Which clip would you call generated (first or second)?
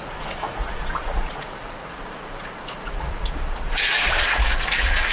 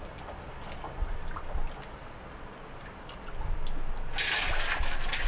first